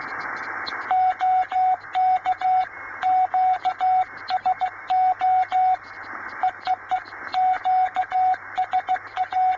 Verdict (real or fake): real